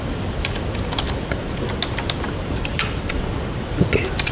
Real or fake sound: real